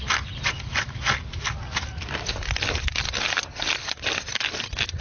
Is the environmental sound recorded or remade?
recorded